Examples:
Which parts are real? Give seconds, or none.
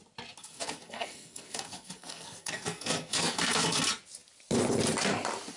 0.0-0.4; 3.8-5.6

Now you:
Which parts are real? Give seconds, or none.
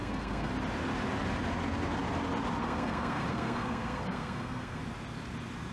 0.5-2.6; 4.8-5.7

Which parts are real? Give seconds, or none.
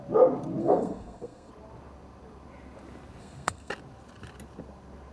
0.0-0.6; 1.5-3.2; 3.7-5.1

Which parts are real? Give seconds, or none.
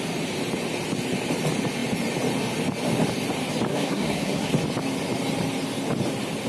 0.0-3.7; 4.5-6.5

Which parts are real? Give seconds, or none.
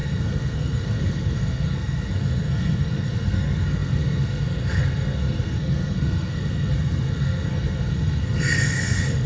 none